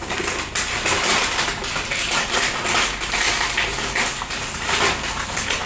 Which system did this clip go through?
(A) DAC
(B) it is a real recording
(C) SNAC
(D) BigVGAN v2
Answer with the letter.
B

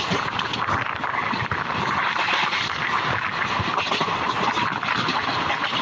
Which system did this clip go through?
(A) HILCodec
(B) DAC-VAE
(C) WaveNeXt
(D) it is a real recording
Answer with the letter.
D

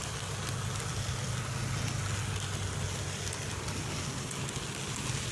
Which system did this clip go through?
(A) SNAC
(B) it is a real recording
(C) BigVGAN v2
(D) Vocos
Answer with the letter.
B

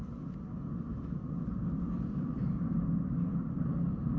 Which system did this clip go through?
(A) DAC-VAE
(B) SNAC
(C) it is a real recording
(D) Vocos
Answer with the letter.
C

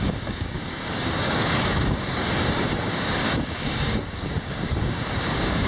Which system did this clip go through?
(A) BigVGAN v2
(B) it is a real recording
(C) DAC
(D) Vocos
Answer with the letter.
C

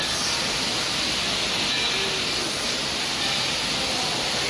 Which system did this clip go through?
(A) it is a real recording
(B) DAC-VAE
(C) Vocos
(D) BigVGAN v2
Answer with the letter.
A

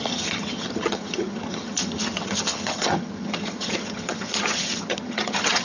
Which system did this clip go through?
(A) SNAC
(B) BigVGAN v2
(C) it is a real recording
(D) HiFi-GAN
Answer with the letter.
D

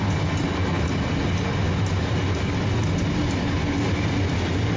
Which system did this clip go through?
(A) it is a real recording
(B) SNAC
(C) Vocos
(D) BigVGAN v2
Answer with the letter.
A